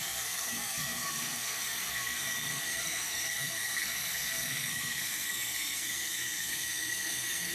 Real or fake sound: fake